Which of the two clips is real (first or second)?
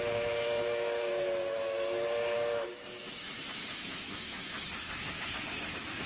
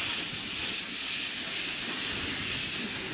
second